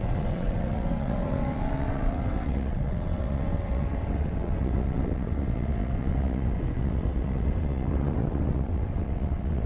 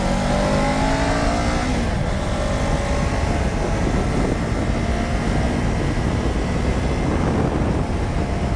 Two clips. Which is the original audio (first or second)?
second